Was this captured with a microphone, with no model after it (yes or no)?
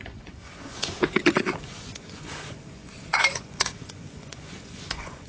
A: no